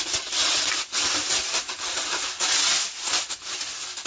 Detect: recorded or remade recorded